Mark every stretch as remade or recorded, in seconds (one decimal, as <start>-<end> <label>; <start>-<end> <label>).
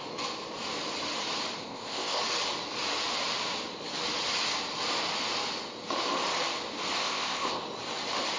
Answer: 0.0-1.6 recorded; 1.6-2.2 remade; 2.2-7.0 recorded; 7.0-7.6 remade; 7.6-8.4 recorded